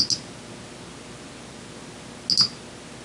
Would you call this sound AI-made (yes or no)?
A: no